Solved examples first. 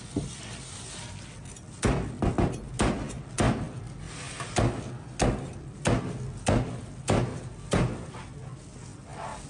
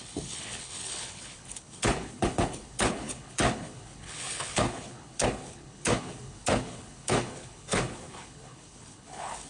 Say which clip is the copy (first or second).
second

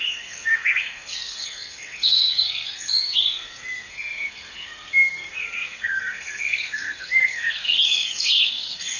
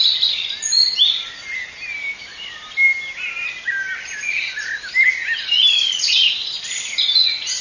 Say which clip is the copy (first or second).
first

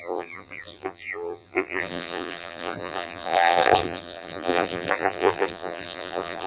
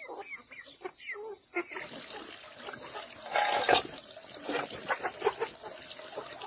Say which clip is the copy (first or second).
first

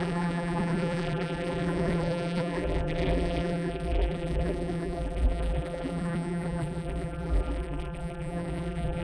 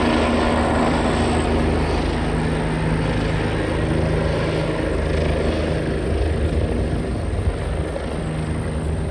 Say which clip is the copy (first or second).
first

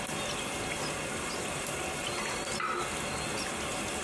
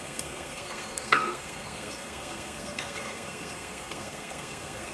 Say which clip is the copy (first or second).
second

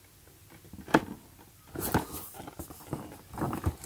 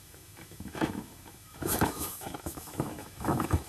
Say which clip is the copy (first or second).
second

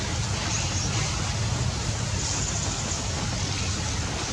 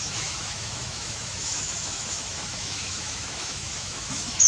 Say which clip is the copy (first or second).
second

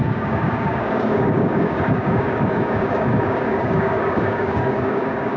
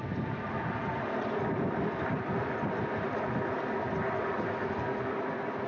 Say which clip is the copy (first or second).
first